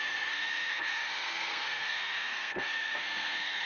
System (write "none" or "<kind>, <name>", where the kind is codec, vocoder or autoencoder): codec, SNAC